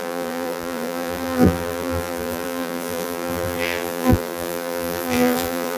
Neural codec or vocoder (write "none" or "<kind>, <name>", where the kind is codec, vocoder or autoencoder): vocoder, BigVGAN v2